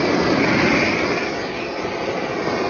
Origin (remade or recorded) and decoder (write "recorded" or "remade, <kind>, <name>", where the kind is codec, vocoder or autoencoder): recorded